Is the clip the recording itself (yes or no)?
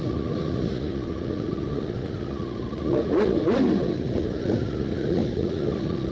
no